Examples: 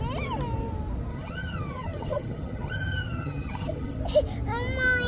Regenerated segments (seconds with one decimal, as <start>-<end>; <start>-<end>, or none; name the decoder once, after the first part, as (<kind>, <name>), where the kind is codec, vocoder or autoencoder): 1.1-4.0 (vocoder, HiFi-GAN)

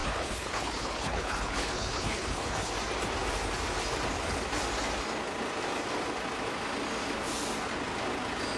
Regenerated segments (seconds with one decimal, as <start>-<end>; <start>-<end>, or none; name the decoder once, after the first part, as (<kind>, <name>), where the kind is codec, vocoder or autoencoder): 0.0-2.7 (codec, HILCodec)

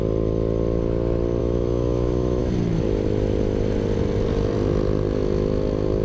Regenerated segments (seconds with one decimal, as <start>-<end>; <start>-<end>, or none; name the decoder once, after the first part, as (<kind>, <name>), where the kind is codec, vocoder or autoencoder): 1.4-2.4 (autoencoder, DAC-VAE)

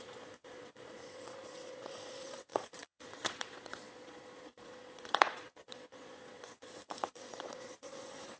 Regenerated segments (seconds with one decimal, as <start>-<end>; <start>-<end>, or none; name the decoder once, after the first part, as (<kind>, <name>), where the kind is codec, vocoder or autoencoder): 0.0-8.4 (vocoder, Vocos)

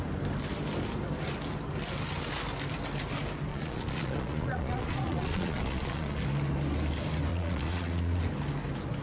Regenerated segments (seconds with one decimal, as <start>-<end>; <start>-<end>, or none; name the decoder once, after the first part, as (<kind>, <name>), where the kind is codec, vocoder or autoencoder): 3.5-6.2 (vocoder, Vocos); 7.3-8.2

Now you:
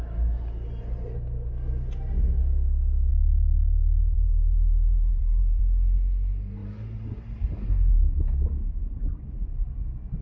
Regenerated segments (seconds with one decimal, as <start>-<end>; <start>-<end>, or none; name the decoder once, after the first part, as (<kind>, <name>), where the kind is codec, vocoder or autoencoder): 3.1-5.6 (vocoder, BigVGAN v2); 6.6-7.9